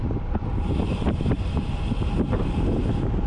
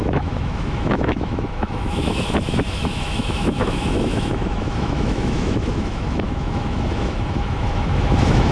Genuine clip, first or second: first